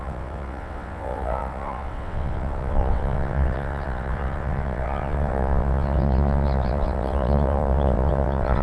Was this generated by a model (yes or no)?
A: yes